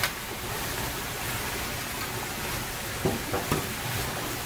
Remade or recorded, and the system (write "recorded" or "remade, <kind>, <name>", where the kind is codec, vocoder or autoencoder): recorded